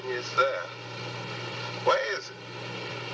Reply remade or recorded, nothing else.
recorded